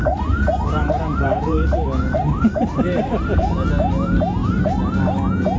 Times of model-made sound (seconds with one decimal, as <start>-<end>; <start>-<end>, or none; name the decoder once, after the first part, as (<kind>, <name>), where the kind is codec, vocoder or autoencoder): 0.0-3.4 (vocoder, BigVGAN v2); 4.4-5.1